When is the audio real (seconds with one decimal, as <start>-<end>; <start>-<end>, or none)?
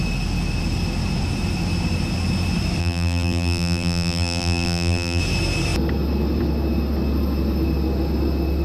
0.0-2.8; 5.2-8.6